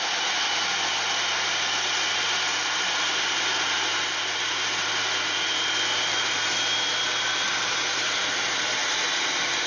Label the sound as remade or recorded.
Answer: recorded